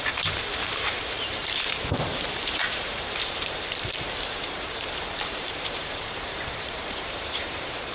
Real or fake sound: fake